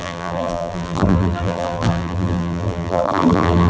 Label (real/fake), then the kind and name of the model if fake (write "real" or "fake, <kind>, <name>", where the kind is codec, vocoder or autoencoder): fake, vocoder, BigVGAN v2